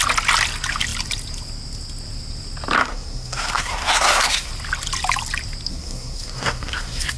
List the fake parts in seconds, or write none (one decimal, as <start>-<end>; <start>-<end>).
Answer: 2.8-4.5; 5.7-7.2